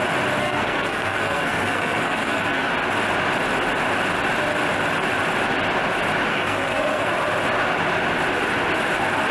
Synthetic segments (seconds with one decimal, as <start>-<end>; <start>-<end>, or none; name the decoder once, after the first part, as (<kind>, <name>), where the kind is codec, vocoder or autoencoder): 0.4-2.7 (codec, SNAC); 6.3-7.1